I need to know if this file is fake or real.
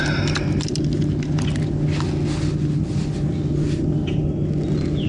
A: real